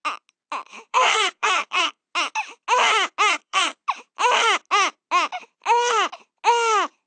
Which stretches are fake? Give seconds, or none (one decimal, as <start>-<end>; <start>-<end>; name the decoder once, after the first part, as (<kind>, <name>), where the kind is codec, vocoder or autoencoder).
0.9-2.0 (codec, SNAC); 3.3-3.8